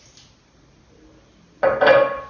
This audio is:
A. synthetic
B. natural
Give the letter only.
B